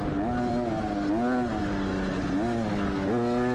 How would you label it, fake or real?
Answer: real